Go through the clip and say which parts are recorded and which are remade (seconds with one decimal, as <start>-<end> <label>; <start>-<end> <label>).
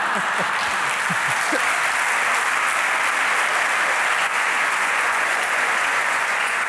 0.0-4.2 recorded; 4.2-6.7 remade